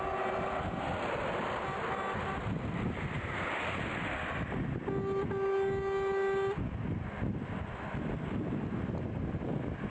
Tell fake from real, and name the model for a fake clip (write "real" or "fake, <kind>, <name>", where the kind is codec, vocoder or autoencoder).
real